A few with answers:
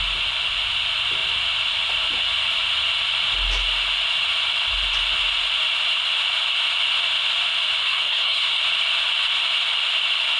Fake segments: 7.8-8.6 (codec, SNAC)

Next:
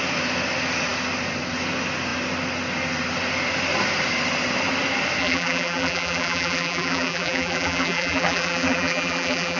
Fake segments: 5.2-9.6 (vocoder, BigVGAN v2)

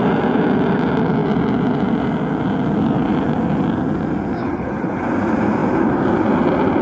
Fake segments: 4.4-5.0 (codec, HILCodec)

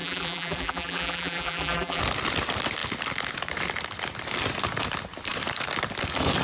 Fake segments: 0.0-2.0 (vocoder, BigVGAN v2)